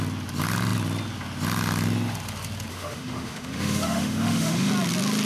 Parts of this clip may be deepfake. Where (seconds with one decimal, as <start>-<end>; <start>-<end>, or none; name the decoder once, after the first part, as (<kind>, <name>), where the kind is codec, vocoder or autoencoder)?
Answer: 2.7-4.7 (autoencoder, DAC-VAE)